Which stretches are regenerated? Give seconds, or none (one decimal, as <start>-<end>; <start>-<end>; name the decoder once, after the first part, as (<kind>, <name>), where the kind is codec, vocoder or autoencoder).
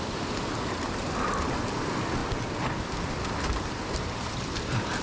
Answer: none